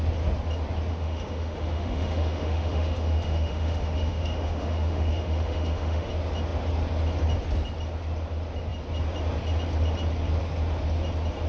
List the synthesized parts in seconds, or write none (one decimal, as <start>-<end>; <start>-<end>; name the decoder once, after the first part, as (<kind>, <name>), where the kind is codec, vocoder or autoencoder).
0.9-6.1 (autoencoder, DAC-VAE)